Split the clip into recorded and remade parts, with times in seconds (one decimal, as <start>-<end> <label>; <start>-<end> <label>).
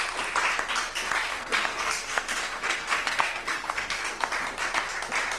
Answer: 0.0-1.3 recorded; 1.3-4.3 remade; 4.3-5.4 recorded